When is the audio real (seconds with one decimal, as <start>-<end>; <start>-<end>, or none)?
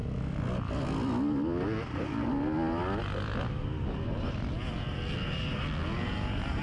0.0-6.6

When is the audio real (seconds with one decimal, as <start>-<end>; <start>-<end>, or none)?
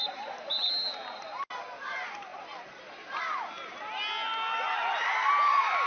0.5-2.3; 3.2-5.9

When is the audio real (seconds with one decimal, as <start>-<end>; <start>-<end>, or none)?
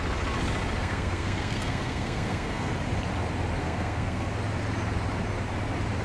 0.0-0.8; 2.7-3.6; 4.3-6.0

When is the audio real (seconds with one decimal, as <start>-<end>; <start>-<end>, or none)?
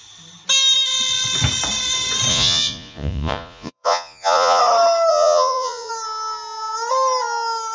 0.0-2.3; 4.6-5.1; 5.9-7.7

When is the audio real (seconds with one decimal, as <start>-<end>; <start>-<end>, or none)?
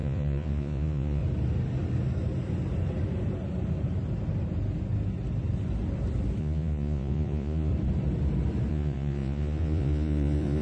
1.2-6.4; 7.7-8.7